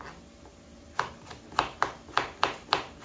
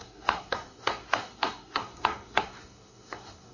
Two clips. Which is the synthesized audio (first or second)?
second